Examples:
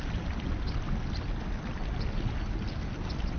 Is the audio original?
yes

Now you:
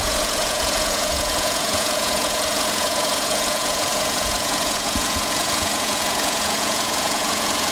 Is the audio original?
no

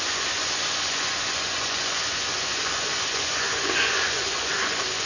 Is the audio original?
no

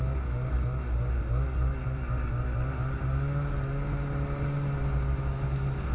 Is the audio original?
yes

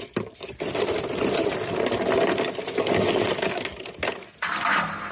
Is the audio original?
yes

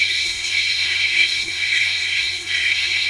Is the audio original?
no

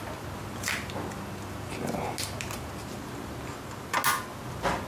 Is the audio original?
yes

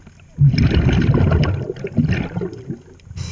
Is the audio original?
yes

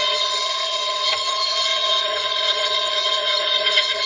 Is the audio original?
no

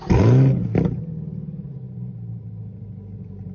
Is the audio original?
yes